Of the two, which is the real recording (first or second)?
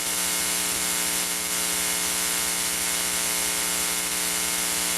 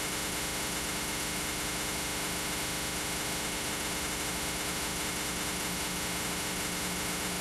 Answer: first